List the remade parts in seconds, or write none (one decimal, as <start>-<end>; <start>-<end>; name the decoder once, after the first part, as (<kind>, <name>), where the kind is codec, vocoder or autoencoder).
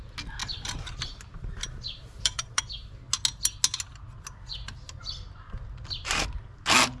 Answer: 0.4-2.6 (vocoder, BigVGAN v2)